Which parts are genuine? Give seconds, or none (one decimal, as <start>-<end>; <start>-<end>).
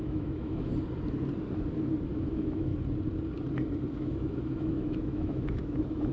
0.7-2.1; 2.7-3.9